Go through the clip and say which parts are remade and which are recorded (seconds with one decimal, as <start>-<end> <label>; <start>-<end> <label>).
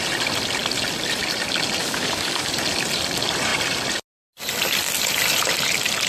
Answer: 0.0-1.8 recorded; 1.8-2.6 remade; 2.6-6.1 recorded